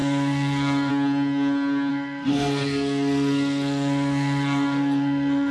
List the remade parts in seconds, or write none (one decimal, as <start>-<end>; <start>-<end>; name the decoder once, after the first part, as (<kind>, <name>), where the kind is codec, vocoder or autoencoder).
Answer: 0.0-0.9 (codec, SNAC); 1.9-5.5